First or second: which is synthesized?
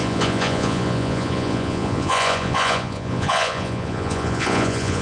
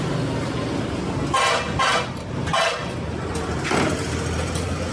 first